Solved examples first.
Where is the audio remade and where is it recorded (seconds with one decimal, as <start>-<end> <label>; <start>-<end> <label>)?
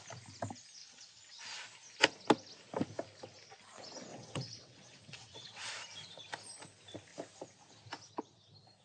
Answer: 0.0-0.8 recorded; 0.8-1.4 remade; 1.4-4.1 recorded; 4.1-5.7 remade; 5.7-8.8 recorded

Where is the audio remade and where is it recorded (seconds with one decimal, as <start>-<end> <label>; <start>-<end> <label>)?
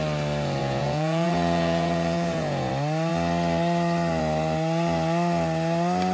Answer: 0.0-0.6 recorded; 0.6-2.7 remade; 2.7-6.1 recorded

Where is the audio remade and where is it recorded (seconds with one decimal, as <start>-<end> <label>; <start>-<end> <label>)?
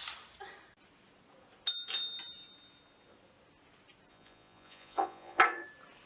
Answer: 0.0-4.1 recorded; 4.1-5.4 remade; 5.4-6.1 recorded